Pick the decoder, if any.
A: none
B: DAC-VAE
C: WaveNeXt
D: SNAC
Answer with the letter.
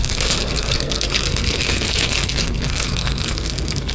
D